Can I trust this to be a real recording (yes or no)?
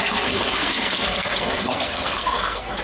no